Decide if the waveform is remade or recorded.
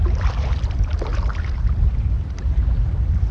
recorded